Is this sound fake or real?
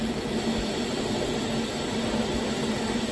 real